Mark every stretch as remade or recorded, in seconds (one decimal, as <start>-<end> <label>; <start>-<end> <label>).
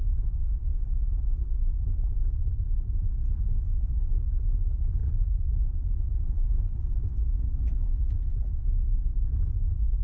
0.0-5.0 recorded; 5.0-6.8 remade; 6.8-10.0 recorded